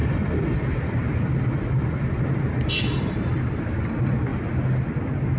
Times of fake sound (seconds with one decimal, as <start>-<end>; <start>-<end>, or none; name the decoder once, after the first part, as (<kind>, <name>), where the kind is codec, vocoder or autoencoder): 3.3-3.8 (vocoder, BigVGAN v2)

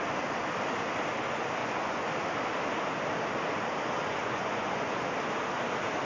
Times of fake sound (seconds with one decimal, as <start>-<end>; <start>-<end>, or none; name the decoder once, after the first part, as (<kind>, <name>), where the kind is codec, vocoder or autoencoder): 1.6-2.1 (vocoder, Vocos); 4.2-5.0

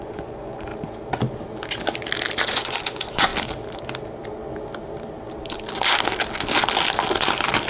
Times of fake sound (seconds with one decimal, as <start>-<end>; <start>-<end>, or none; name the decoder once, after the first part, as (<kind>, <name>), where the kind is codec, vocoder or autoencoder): 0.0-0.7 (vocoder, Vocos); 2.4-3.3

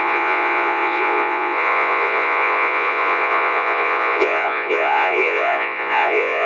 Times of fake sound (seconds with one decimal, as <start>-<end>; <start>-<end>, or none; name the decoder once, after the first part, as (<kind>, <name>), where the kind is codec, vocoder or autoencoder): 0.0-6.5 (vocoder, Vocos)

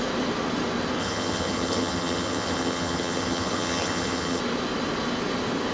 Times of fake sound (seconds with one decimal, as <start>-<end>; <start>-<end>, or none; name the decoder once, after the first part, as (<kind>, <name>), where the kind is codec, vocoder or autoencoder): 1.0-4.4 (vocoder, HiFi-GAN)

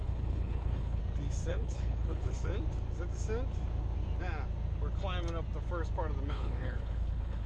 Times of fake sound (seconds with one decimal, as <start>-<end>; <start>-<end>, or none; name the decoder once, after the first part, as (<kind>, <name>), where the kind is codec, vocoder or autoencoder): 0.0-1.0 (codec, HILCodec); 1.5-2.5; 6.3-7.5

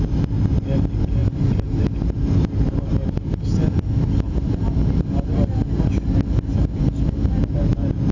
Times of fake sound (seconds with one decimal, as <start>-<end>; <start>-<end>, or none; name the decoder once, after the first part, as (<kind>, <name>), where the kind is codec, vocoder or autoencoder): none

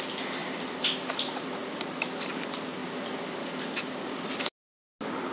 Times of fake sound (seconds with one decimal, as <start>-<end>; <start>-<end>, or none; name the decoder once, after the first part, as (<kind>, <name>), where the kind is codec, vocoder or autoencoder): none